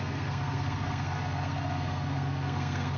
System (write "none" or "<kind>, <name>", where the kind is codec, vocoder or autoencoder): codec, SNAC